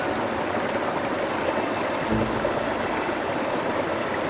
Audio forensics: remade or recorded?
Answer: recorded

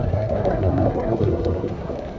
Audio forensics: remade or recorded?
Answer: remade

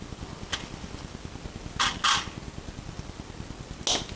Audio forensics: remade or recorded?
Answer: recorded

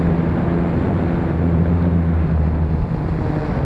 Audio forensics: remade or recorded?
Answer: recorded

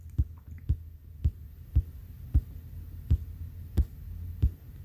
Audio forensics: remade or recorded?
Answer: recorded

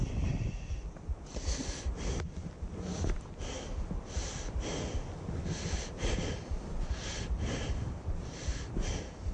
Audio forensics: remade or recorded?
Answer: recorded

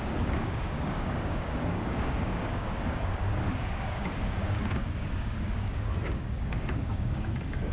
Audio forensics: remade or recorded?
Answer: remade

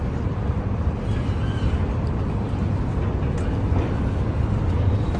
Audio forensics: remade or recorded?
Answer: recorded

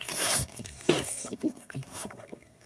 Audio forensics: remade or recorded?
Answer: remade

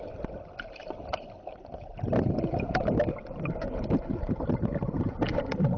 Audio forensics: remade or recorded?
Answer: recorded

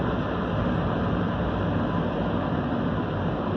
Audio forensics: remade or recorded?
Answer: remade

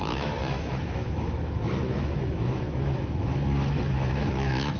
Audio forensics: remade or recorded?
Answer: remade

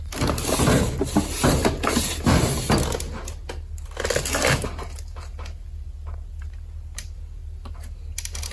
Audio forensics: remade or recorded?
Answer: recorded